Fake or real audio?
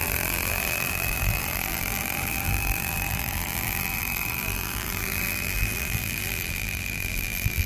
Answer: fake